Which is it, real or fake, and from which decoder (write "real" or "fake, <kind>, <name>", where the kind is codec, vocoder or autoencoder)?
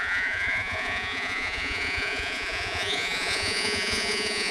fake, vocoder, Vocos